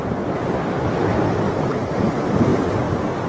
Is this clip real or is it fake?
real